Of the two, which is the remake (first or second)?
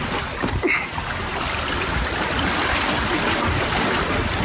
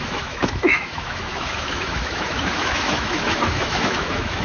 second